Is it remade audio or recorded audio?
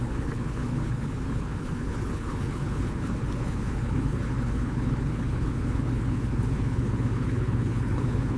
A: remade